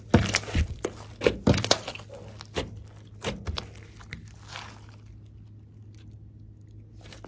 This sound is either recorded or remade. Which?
recorded